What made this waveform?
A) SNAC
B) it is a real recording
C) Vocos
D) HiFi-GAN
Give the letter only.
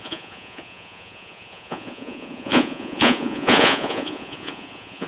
C